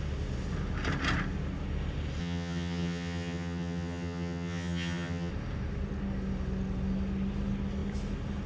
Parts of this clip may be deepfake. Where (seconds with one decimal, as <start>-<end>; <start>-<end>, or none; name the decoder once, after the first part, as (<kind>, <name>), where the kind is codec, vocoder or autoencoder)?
2.2-5.3 (vocoder, HiFi-GAN)